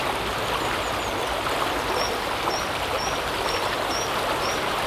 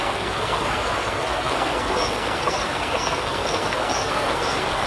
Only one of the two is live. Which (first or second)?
first